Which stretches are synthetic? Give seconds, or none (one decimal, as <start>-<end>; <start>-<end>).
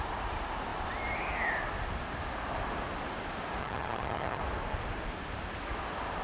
3.6-4.4